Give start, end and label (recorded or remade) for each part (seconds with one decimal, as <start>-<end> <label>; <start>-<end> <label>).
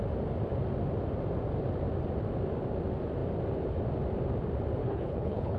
0.0-4.8 recorded; 4.8-5.6 remade